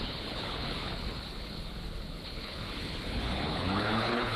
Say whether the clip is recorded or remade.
remade